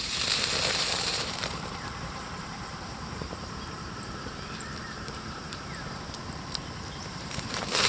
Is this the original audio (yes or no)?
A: no